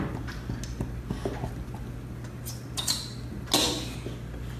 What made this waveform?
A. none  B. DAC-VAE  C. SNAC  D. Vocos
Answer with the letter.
A